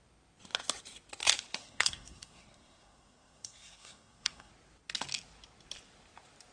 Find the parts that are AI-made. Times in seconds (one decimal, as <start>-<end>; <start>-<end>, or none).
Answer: 1.6-4.5